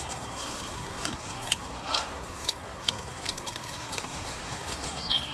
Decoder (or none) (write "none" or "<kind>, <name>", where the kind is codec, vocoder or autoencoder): codec, SNAC